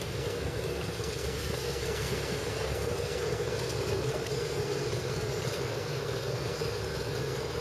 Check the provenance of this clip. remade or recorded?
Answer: remade